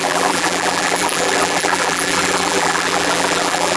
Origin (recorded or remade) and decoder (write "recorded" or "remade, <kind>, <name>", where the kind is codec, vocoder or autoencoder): remade, vocoder, BigVGAN v2